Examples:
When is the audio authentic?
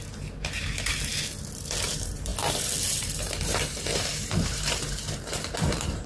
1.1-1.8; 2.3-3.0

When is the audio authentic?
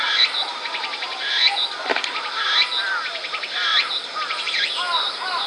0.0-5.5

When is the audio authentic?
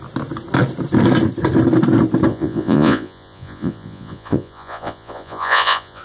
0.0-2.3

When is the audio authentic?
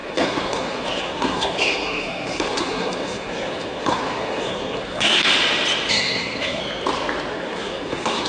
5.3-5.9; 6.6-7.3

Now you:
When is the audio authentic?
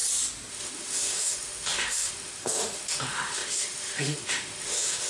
0.0-0.5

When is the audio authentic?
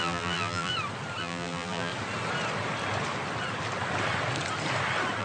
0.7-1.2; 1.9-5.2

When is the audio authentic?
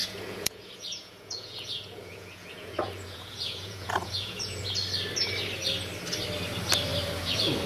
4.6-7.7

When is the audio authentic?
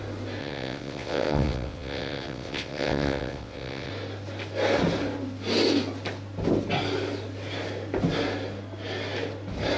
0.0-0.4; 3.9-9.8